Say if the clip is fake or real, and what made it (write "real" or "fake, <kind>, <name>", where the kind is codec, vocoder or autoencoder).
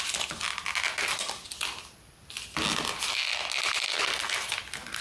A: real